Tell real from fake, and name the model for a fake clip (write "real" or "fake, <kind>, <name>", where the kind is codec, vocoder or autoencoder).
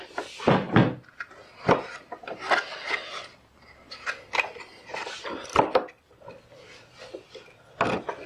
real